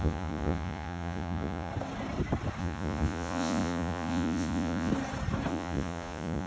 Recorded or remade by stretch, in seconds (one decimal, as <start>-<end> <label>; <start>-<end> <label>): 0.0-1.7 remade; 1.7-2.6 recorded; 2.6-4.9 remade; 4.9-5.5 recorded; 5.5-6.5 remade